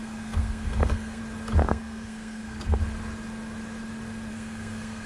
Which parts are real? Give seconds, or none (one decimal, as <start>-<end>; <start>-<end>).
1.2-1.6; 2.8-4.3